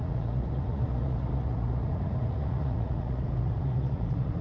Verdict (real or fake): fake